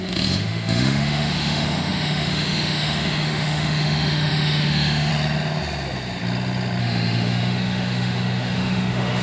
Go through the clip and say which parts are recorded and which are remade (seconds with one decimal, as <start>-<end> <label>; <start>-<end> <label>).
0.0-5.1 remade; 5.1-6.8 recorded; 6.8-9.2 remade